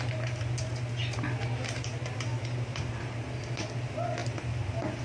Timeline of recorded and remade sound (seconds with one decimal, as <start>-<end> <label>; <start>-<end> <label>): 0.0-5.0 recorded

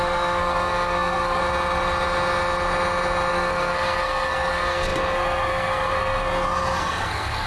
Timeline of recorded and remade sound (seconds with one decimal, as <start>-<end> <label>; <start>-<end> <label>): 0.0-1.4 remade; 1.4-3.3 recorded; 3.3-7.5 remade

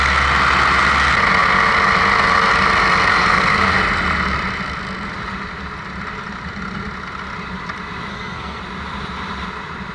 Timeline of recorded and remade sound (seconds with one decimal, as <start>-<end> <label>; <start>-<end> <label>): 0.0-3.1 recorded; 3.1-3.7 remade; 3.7-8.1 recorded; 8.1-8.6 remade; 8.6-9.9 recorded